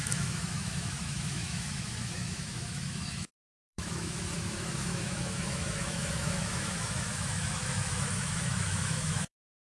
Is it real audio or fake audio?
fake